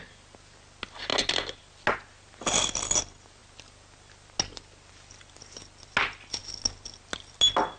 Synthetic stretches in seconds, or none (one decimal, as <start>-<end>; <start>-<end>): none